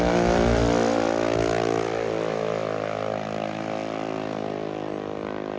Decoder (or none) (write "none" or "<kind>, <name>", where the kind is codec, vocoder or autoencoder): none